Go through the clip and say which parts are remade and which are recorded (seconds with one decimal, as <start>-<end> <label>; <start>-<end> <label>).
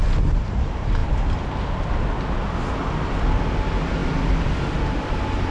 0.0-5.5 recorded